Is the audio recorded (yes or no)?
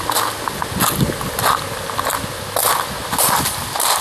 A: yes